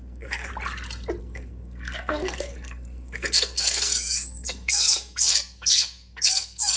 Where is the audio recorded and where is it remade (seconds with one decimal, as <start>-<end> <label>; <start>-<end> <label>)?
0.0-0.5 remade; 0.5-1.2 recorded; 1.2-6.8 remade

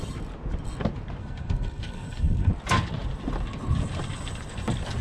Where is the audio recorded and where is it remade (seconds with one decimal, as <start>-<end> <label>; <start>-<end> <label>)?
0.0-1.2 recorded; 1.2-2.5 remade; 2.5-5.0 recorded